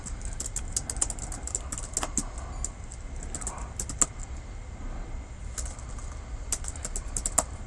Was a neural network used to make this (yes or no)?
no